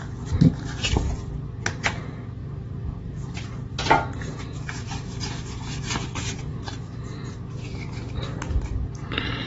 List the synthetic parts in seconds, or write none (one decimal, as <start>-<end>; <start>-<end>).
2.4-4.3; 6.5-7.0